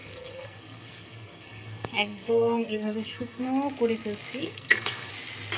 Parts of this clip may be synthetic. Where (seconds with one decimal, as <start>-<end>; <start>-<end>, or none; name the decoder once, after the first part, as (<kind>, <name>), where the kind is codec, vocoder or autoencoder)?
0.0-3.4 (codec, SNAC); 4.4-5.1